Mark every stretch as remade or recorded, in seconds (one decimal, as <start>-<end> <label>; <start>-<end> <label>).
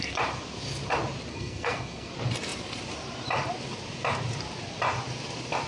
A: 0.0-1.3 recorded; 1.3-2.1 remade; 2.1-5.7 recorded